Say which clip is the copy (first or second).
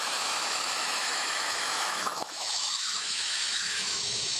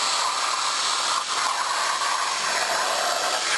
first